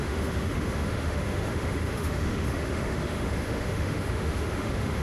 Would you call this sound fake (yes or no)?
yes